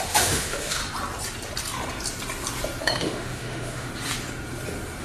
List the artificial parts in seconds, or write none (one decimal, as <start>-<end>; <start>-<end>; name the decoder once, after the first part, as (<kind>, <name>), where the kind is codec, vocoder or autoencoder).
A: 0.0-0.8 (autoencoder, DAC-VAE); 2.8-3.9

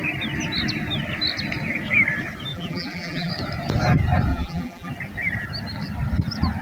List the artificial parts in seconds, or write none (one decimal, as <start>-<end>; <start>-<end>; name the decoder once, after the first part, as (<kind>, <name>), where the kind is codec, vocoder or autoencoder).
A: 2.5-3.3 (vocoder, BigVGAN v2); 4.3-4.9